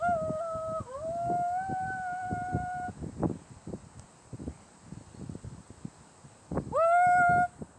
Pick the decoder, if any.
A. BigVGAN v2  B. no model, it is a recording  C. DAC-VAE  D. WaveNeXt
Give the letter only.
B